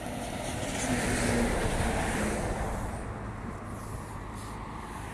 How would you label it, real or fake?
real